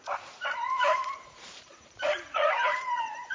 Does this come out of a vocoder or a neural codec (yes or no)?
yes